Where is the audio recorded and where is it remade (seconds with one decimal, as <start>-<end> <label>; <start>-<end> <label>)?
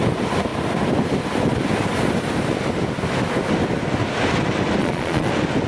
0.0-4.8 recorded; 4.8-5.3 remade; 5.3-5.7 recorded